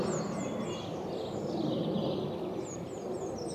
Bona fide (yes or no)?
yes